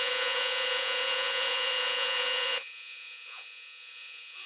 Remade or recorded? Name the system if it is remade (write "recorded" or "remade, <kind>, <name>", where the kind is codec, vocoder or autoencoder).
remade, vocoder, Vocos